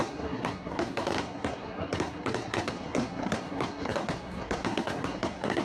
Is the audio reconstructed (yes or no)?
yes